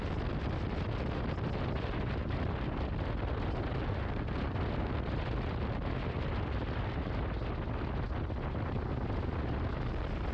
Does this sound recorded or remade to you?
recorded